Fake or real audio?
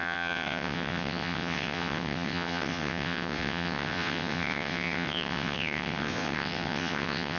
fake